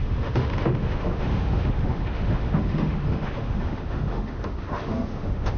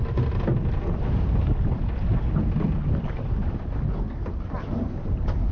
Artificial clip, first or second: first